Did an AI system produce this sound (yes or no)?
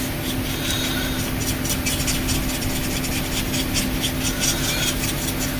no